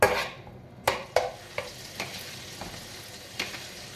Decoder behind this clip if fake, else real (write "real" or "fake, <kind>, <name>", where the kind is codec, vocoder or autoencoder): real